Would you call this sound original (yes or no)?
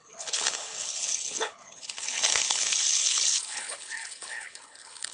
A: no